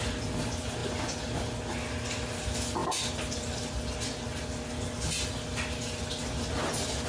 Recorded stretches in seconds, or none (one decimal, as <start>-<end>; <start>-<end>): 0.0-7.1